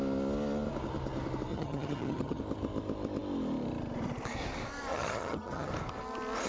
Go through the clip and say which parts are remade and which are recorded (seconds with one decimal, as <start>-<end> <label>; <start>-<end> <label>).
0.0-1.5 recorded; 1.5-2.4 remade; 2.4-4.9 recorded; 4.9-5.7 remade; 5.7-6.5 recorded